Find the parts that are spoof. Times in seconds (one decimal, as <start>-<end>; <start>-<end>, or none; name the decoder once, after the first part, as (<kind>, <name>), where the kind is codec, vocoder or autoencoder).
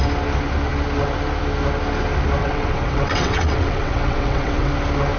2.4-4.7 (vocoder, WaveNeXt)